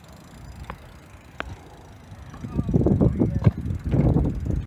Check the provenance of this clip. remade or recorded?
recorded